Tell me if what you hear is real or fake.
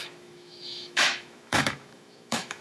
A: fake